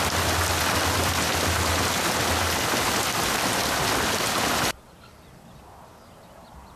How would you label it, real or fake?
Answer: real